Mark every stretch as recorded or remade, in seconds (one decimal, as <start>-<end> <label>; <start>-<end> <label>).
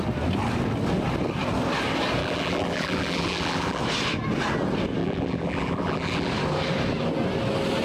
0.0-2.2 recorded; 2.2-3.8 remade; 3.8-5.0 recorded; 5.0-6.3 remade; 6.3-7.8 recorded